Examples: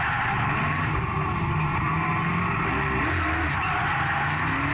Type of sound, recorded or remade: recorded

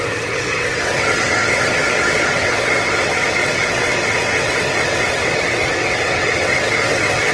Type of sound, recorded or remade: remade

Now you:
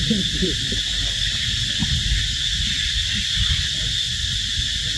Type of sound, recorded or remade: recorded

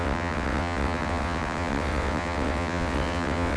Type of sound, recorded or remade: remade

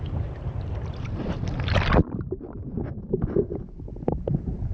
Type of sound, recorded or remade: recorded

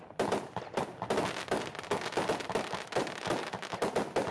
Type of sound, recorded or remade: recorded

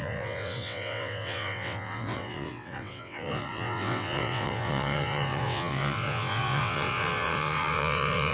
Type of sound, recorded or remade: remade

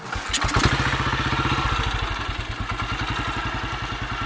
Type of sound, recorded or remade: recorded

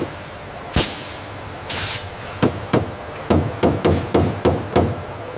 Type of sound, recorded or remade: recorded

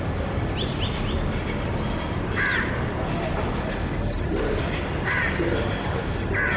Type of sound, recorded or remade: recorded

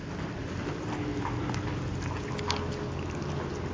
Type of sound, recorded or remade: recorded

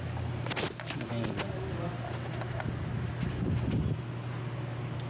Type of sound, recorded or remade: recorded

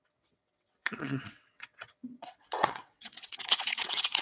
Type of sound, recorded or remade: remade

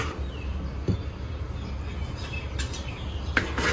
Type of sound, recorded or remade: recorded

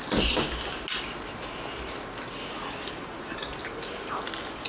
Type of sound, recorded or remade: recorded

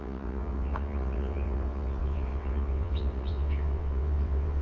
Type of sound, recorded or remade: remade